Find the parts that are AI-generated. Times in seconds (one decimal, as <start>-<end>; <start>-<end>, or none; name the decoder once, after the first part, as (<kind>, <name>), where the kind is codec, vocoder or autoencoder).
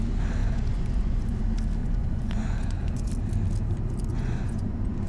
0.4-1.4 (vocoder, Vocos); 1.8-3.1; 4.1-5.1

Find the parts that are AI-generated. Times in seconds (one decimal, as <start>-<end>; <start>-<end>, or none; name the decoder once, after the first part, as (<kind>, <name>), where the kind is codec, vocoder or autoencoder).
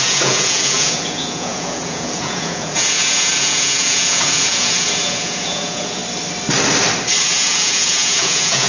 0.0-6.0 (vocoder, Vocos); 7.2-8.7